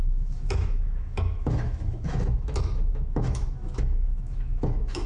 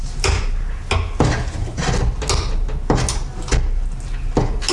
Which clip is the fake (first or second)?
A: first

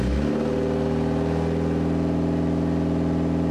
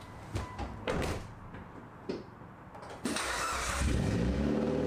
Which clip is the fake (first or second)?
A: second